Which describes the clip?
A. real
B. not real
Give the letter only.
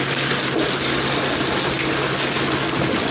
A